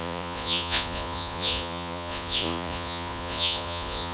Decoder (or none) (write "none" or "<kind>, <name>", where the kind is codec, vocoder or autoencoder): vocoder, Vocos